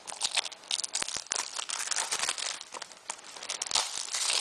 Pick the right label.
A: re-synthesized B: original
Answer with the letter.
B